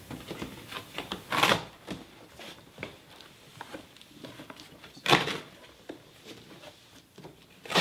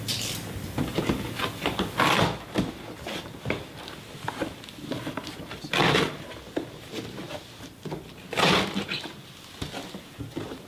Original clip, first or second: second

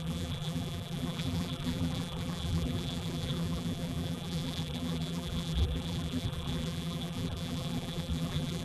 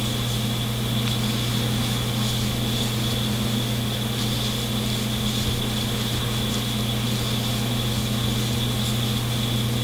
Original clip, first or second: second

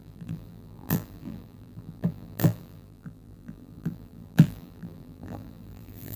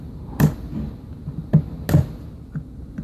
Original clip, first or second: second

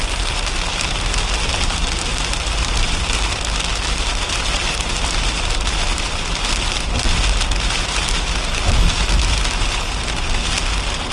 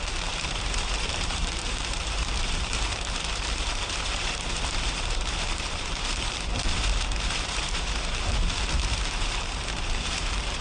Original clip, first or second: first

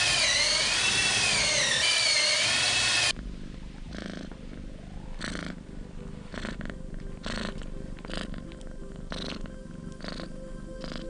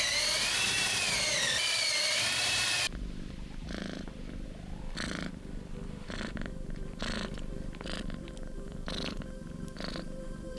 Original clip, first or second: first